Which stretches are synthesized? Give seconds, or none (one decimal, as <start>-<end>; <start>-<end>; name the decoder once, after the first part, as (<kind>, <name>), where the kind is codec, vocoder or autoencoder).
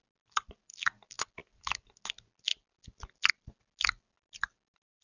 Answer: none